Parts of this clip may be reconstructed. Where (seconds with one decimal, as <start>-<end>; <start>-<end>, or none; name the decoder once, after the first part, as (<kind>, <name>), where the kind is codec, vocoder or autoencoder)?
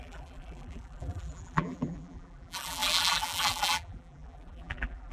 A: 0.0-5.1 (vocoder, BigVGAN v2)